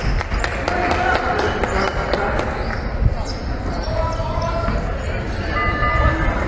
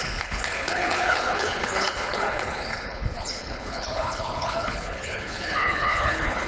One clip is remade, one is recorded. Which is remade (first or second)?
second